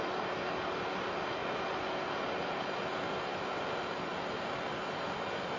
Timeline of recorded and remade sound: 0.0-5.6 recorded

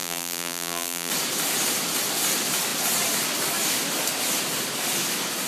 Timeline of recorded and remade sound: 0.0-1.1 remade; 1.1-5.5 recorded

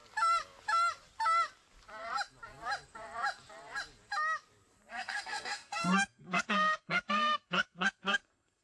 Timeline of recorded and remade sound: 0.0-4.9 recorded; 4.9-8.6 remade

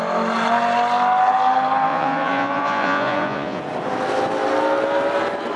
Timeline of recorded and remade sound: 0.0-1.9 recorded; 1.9-3.6 remade; 3.6-5.6 recorded

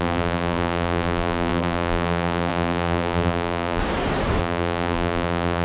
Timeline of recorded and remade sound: 0.0-3.8 remade; 3.8-4.4 recorded; 4.4-5.6 remade

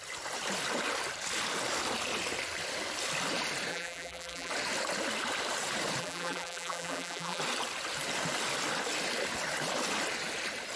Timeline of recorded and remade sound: 0.0-3.7 recorded; 3.7-4.5 remade; 4.5-6.0 recorded; 6.0-7.4 remade; 7.4-10.8 recorded